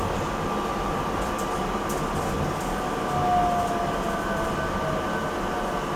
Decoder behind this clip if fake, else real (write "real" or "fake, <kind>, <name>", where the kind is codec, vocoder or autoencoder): real